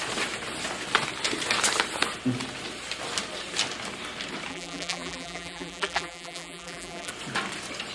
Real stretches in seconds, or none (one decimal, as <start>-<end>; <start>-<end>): 0.0-4.5; 7.1-7.9